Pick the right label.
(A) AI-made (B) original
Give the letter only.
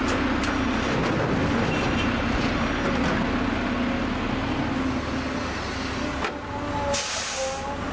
B